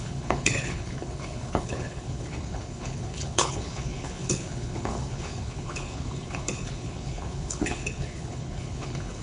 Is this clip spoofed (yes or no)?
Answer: yes